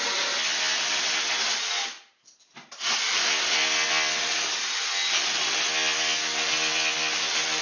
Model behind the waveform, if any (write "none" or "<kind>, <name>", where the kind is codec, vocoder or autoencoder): none